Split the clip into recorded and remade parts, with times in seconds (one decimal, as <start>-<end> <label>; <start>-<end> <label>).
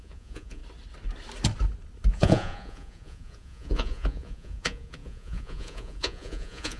0.0-0.6 remade; 0.6-2.1 recorded; 2.1-6.8 remade